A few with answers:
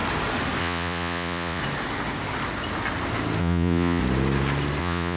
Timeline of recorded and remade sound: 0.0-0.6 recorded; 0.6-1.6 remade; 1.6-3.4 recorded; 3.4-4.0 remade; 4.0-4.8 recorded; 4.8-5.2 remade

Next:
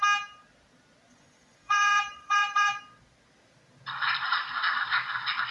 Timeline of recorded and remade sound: 0.0-1.1 recorded; 1.1-2.8 remade; 2.8-5.5 recorded

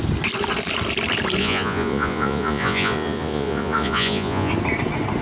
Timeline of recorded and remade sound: 0.0-1.4 recorded; 1.4-4.5 remade; 4.5-5.2 recorded

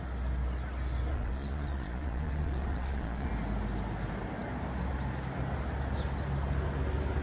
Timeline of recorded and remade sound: 0.0-1.1 recorded; 1.1-3.3 remade; 3.3-7.2 recorded